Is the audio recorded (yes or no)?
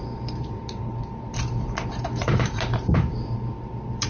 no